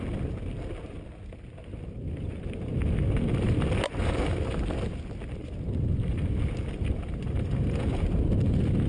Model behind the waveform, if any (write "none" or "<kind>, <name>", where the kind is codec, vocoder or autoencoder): none